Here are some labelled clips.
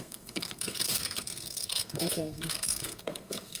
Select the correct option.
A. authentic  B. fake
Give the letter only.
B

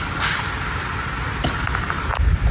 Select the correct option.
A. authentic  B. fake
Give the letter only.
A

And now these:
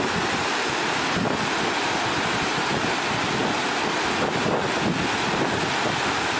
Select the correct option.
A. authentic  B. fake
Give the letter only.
A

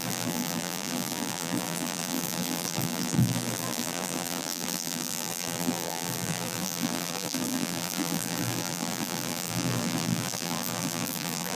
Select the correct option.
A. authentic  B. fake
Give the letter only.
B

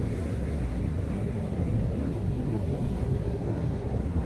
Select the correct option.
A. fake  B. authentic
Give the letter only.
A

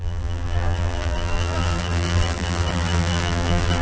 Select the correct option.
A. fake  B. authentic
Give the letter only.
A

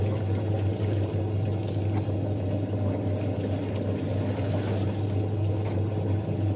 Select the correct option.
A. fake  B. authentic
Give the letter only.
B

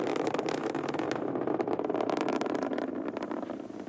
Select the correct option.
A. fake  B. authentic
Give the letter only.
A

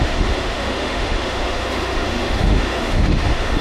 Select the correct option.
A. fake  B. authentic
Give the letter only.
A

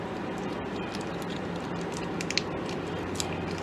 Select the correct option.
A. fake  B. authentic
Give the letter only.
B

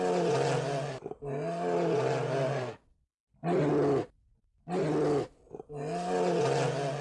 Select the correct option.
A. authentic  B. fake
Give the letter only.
A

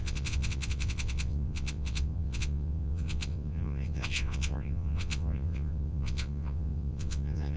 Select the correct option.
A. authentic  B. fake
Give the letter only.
B